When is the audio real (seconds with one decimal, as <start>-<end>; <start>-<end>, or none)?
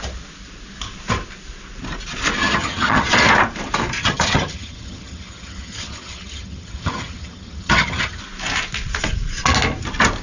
0.0-2.4; 3.1-4.0; 8.2-10.2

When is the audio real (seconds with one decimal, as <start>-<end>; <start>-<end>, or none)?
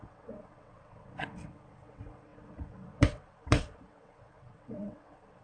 none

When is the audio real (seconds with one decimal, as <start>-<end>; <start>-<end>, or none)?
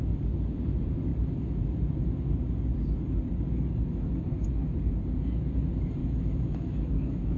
0.0-6.0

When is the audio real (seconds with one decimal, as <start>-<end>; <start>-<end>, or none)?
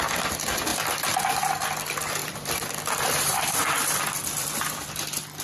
0.0-0.7; 1.3-2.2; 4.0-5.4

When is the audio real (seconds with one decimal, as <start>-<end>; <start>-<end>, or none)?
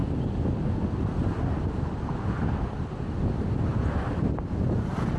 0.0-5.2